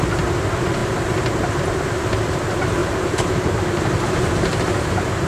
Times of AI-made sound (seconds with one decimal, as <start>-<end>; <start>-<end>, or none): 2.8-4.3